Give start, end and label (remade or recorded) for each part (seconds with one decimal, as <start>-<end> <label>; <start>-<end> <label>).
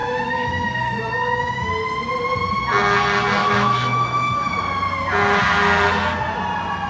0.0-1.7 remade; 1.7-3.4 recorded; 3.4-4.6 remade; 4.6-6.9 recorded